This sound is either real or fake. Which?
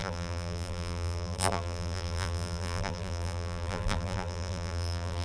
fake